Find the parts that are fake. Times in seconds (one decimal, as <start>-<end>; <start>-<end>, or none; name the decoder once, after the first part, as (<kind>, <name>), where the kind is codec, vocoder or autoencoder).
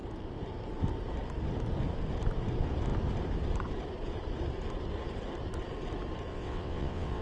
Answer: 6.3-7.2 (vocoder, WaveNeXt)